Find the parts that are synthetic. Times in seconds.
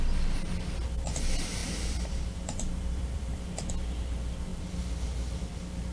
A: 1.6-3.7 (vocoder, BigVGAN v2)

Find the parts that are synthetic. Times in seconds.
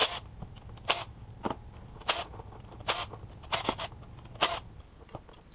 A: 0.0-3.3 (vocoder, BigVGAN v2)